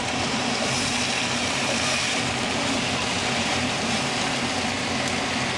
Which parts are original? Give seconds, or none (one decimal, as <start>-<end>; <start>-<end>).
0.0-0.4; 1.0-1.4; 4.1-5.6